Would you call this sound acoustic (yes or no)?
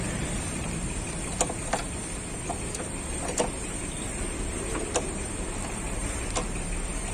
no